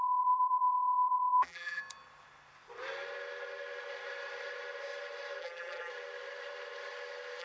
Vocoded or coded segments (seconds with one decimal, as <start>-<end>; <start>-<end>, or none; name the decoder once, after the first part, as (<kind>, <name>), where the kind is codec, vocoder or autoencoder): 0.0-1.8 (vocoder, BigVGAN v2); 5.4-5.9

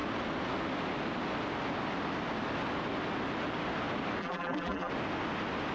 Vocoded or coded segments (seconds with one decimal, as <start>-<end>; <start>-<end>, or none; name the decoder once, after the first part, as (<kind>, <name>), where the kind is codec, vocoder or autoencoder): 4.2-4.9 (vocoder, BigVGAN v2)

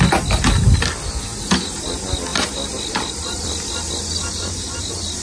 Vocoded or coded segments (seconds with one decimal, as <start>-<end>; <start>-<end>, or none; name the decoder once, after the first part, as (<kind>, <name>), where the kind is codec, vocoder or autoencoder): 2.3-3.9 (vocoder, BigVGAN v2)